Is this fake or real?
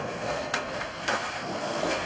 fake